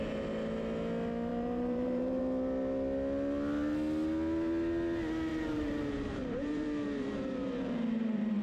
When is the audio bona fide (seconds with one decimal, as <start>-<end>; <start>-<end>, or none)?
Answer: 0.0-1.3; 2.2-5.3

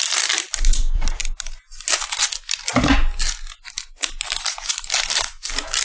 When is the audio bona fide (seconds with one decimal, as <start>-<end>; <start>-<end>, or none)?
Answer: 1.2-4.7

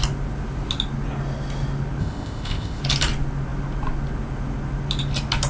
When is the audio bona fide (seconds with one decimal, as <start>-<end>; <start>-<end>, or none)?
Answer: 0.0-2.0; 2.8-5.5

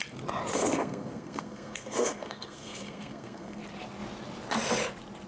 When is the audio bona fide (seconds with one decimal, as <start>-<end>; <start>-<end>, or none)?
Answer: 0.0-0.5; 3.6-5.3

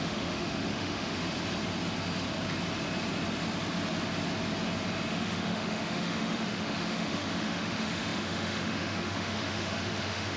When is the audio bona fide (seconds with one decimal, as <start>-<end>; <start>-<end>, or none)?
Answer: 1.2-5.1

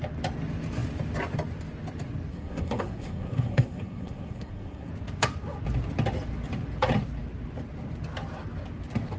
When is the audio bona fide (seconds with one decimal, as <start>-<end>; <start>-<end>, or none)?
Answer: 0.0-2.3; 4.9-9.2

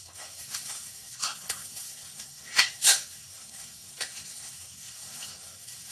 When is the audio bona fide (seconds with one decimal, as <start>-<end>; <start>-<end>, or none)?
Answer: none